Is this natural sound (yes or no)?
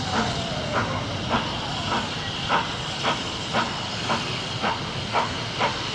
yes